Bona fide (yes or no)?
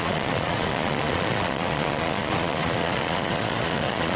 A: no